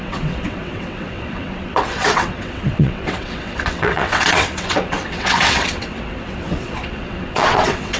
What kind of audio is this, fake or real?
fake